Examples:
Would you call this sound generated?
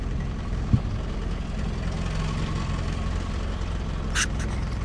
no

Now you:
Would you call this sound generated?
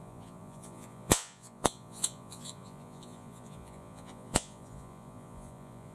yes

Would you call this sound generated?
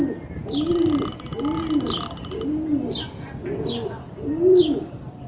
no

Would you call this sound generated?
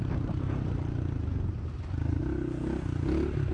no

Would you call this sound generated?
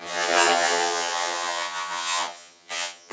yes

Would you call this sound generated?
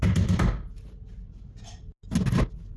no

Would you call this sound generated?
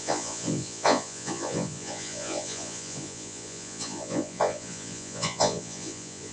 yes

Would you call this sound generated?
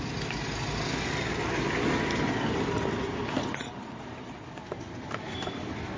no